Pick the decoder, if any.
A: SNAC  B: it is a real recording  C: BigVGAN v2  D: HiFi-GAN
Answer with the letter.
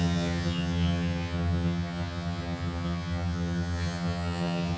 D